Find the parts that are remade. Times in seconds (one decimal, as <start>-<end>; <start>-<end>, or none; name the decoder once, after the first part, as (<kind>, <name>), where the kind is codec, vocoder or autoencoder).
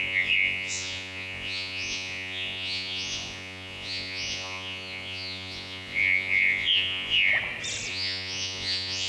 0.0-7.3 (vocoder, Vocos); 7.9-9.1